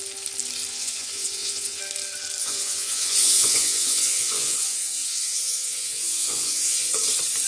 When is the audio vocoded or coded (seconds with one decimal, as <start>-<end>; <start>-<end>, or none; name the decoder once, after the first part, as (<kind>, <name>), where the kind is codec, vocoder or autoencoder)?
0.7-1.8 (vocoder, Vocos); 2.4-6.9